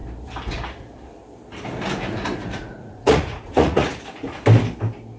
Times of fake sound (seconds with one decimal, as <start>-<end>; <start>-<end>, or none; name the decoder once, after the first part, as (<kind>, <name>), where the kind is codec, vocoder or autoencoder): 2.4-4.4 (vocoder, Vocos)

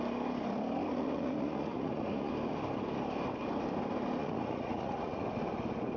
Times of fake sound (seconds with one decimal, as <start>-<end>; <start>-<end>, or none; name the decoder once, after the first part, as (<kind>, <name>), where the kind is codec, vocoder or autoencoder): 0.8-2.3 (vocoder, Vocos); 4.2-5.2

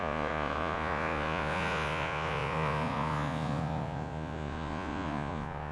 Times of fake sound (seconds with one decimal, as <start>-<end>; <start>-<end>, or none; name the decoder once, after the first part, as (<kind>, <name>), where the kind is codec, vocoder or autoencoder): 0.0-5.7 (vocoder, Vocos)

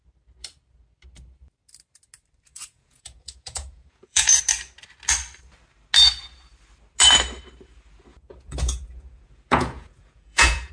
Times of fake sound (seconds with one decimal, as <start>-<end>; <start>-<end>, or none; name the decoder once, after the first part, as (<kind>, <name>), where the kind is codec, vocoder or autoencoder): 2.5-4.4 (vocoder, Vocos); 8.1-10.7

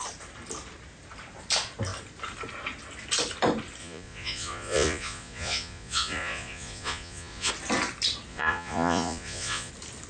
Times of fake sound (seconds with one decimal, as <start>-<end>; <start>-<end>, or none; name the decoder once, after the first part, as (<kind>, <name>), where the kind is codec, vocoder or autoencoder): 3.8-7.5 (vocoder, Vocos); 8.3-9.7

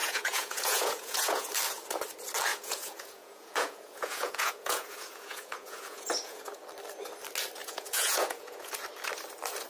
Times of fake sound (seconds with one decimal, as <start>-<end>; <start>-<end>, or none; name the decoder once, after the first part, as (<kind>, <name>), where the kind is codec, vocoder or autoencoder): 0.0-1.5 (vocoder, Vocos); 2.5-6.6; 7.6-8.7

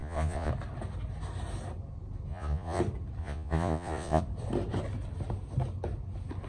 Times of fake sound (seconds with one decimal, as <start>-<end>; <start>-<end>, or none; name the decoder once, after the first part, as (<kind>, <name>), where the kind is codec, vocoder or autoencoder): 0.0-0.5 (vocoder, Vocos); 2.3-2.8; 3.2-4.2

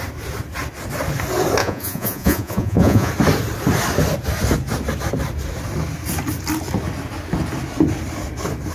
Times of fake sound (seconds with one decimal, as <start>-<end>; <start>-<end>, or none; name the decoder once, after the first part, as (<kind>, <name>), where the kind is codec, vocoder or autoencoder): 1.6-3.1 (vocoder, Vocos)